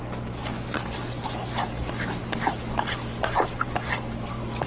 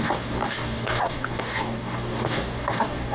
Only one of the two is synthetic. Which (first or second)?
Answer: second